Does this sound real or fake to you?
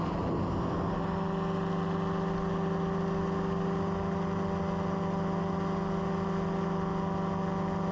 real